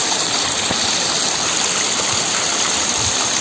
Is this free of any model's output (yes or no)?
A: yes